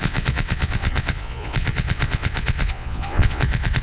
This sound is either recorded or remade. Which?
remade